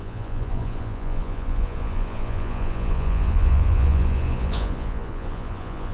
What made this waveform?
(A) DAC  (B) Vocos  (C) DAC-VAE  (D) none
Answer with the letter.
B